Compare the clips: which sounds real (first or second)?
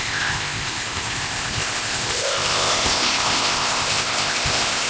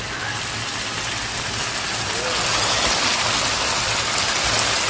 second